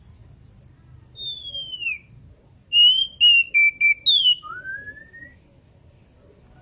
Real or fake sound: real